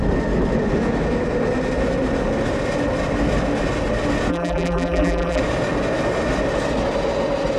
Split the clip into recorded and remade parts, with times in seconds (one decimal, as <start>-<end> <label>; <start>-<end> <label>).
0.0-4.3 recorded; 4.3-5.4 remade; 5.4-7.6 recorded